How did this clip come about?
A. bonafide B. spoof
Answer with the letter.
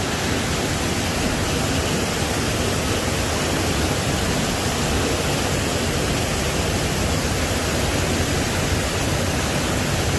A